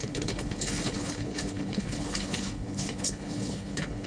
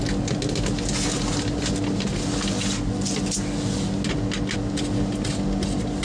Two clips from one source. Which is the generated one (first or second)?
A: first